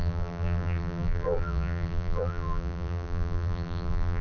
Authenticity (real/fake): fake